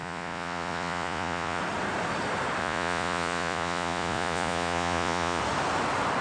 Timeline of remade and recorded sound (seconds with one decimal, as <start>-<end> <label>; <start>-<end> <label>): 0.0-1.6 remade; 1.6-2.6 recorded; 2.6-5.4 remade; 5.4-6.2 recorded